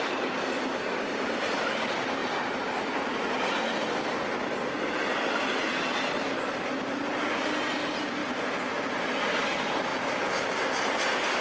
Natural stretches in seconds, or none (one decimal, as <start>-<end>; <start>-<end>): 0.0-11.4